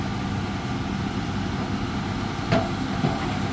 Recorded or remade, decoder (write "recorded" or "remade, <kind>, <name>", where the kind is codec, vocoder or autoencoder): recorded